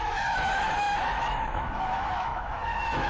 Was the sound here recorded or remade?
remade